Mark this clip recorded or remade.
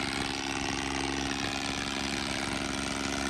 recorded